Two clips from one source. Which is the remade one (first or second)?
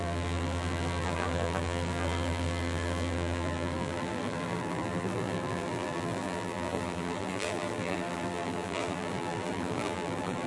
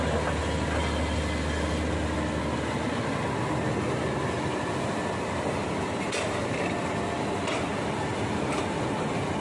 first